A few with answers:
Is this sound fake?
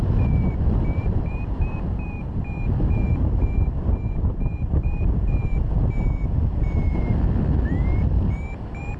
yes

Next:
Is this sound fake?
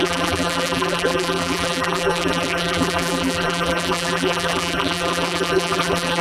yes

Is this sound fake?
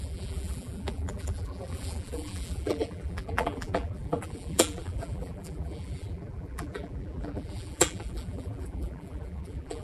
yes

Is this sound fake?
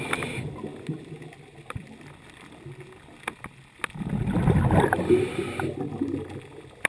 no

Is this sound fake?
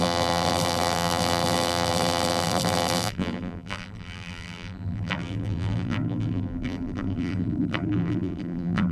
yes